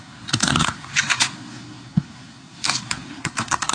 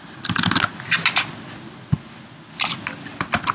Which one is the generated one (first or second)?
first